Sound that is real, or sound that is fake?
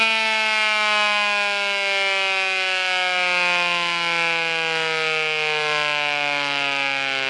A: real